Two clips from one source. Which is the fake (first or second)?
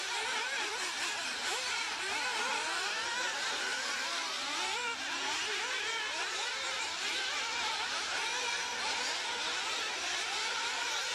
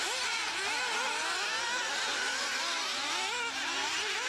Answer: first